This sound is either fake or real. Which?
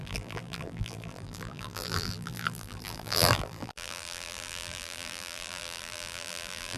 fake